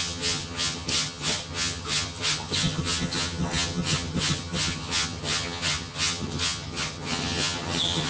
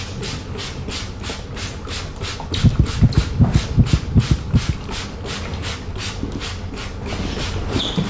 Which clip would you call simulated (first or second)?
first